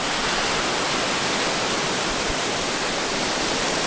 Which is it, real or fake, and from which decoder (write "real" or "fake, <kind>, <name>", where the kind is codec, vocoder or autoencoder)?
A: fake, vocoder, BigVGAN v2